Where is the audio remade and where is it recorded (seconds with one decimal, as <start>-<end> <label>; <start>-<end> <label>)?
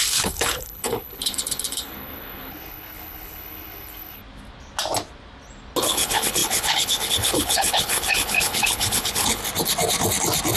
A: 0.0-4.2 remade; 4.2-5.8 recorded; 5.8-9.4 remade; 9.4-10.6 recorded